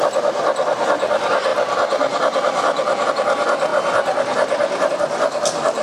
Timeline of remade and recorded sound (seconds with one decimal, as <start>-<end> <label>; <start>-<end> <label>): 0.0-1.5 recorded; 1.5-3.1 remade; 3.1-3.7 recorded; 3.7-4.9 remade; 4.9-5.8 recorded